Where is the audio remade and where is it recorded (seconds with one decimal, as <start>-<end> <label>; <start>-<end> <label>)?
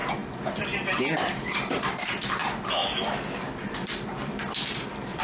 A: 0.0-5.2 remade